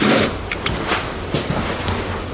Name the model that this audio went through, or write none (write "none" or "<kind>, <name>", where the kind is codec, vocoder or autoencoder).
none